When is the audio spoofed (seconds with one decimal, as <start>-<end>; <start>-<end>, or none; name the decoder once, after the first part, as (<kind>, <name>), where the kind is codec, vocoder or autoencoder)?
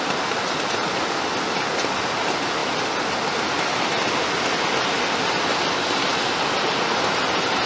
none